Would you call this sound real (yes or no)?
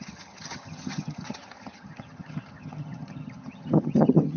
no